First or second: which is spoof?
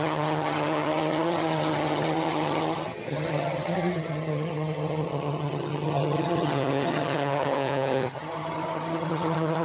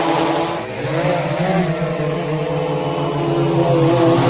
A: first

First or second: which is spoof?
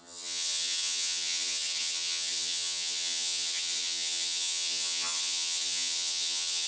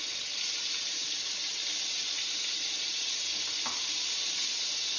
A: first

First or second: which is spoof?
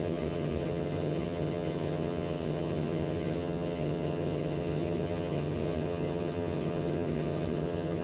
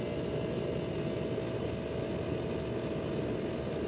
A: first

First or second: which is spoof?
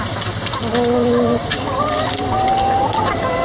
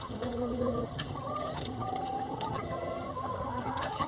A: second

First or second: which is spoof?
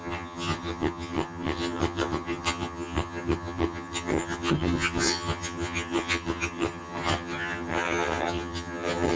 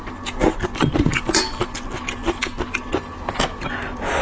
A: first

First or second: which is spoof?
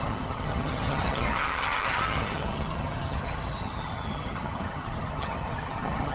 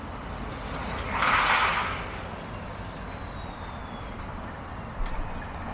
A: first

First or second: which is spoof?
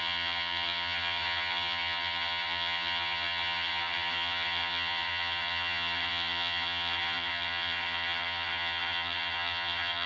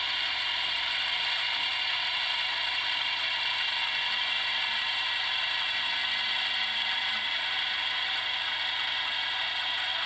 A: first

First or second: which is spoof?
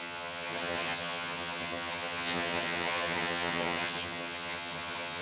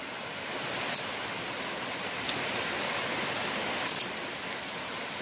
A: first